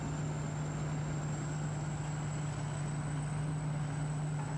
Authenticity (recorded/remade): recorded